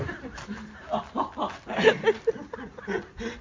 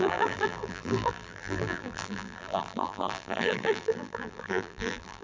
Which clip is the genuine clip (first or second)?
first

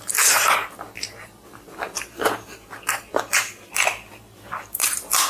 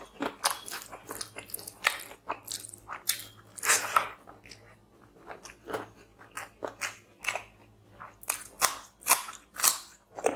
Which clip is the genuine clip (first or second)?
second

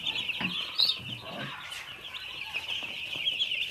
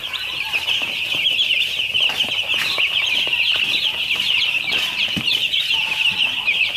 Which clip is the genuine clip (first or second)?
first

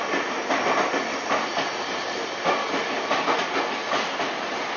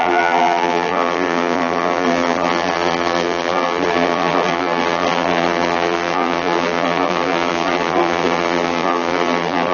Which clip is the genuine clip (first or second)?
first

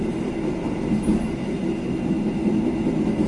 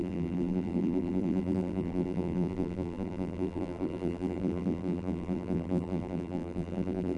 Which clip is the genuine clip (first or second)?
first